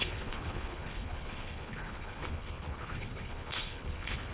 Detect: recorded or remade remade